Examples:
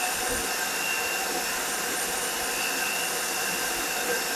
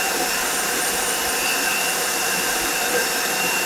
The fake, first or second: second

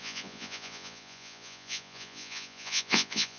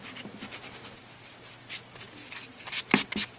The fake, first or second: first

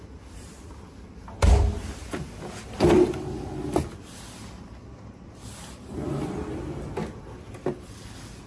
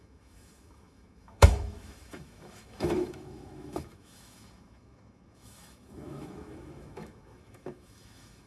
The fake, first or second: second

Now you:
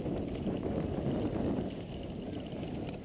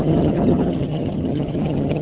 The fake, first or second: second